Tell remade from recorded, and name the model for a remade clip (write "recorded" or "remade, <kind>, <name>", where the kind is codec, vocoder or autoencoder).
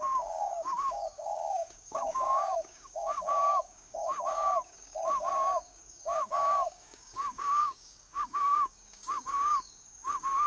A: remade, codec, DAC